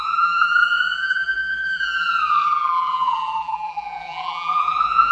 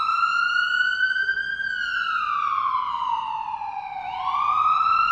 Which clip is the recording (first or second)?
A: second